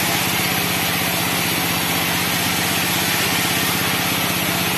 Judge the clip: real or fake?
real